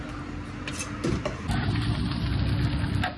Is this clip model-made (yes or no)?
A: no